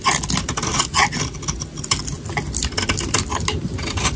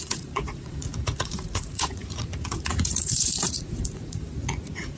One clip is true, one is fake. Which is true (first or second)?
first